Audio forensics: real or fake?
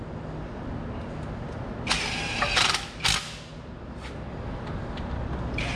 real